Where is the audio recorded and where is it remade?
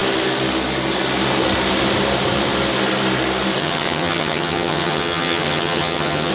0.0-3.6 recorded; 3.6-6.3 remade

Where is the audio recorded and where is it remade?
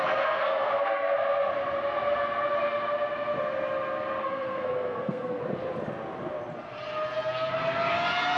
0.0-1.5 remade; 1.5-4.2 recorded; 4.2-5.4 remade; 5.4-8.4 recorded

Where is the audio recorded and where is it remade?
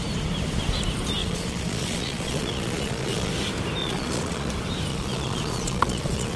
0.0-1.2 recorded; 1.2-3.3 remade; 3.3-3.8 recorded; 3.8-4.5 remade; 4.5-4.9 recorded; 4.9-6.4 remade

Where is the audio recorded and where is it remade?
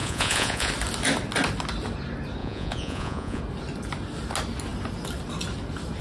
0.0-0.7 remade; 0.7-2.4 recorded; 2.4-3.4 remade; 3.4-6.0 recorded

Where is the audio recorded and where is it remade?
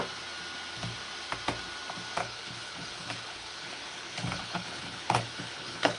0.0-2.2 recorded; 2.2-6.0 remade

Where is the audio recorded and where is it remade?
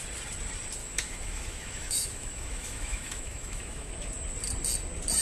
0.0-0.8 recorded; 0.8-3.9 remade; 3.9-5.2 recorded